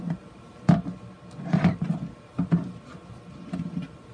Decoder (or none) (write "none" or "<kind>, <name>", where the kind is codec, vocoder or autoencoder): none